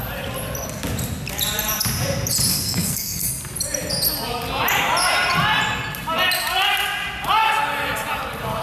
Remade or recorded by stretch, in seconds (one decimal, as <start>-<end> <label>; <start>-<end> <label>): 0.0-2.5 recorded; 2.5-3.3 remade; 3.3-8.6 recorded